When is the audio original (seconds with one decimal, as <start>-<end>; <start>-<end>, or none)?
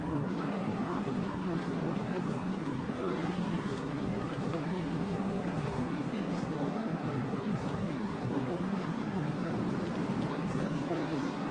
9.5-10.3